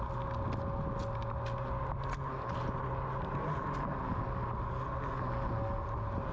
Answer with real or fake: real